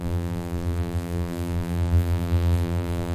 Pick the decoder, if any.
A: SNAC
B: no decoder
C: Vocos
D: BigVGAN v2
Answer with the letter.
D